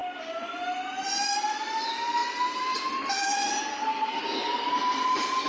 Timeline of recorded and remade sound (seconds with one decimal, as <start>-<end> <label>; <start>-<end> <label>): 0.0-3.7 recorded; 3.7-4.2 remade; 4.2-5.5 recorded